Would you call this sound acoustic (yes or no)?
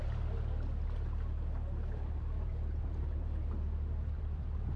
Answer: yes